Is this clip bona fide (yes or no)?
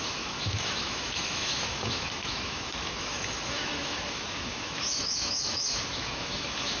no